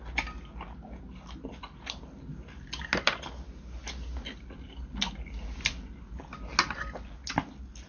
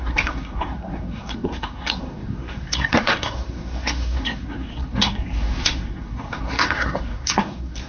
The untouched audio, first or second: first